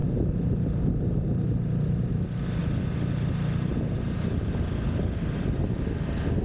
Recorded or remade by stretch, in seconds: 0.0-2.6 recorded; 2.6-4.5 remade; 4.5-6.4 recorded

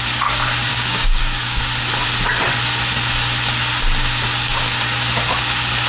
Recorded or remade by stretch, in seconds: 0.0-0.7 recorded; 0.7-1.6 remade; 1.6-5.9 recorded

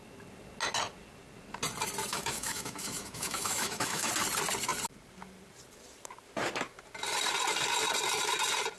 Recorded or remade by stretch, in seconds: 0.0-2.1 recorded; 2.1-4.1 remade; 4.1-8.8 recorded